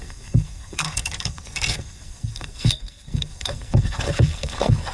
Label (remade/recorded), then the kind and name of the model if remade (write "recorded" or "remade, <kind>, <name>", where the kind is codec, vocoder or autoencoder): remade, codec, SNAC